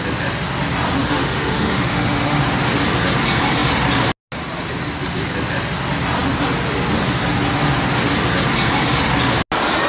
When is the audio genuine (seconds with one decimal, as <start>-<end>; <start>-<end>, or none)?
0.0-1.0; 2.4-9.9

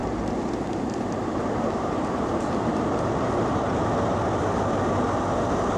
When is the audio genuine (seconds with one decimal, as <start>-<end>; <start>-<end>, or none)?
3.3-5.8